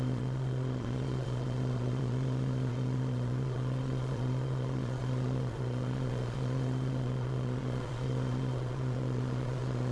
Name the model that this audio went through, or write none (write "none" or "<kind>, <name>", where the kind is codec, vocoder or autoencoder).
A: vocoder, Vocos